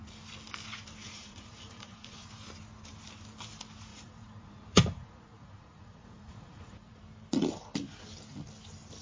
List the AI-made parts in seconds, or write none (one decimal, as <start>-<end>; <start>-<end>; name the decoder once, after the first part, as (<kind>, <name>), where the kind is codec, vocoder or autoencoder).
1.0-2.3 (vocoder, Vocos); 3.9-7.0